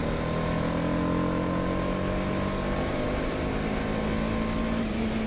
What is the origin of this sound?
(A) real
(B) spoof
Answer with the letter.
A